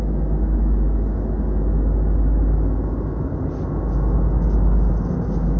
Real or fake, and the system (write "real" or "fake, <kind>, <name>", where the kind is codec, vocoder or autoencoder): real